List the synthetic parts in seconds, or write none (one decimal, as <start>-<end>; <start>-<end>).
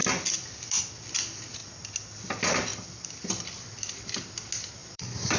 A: 1.6-2.2; 2.7-3.5; 4.8-5.4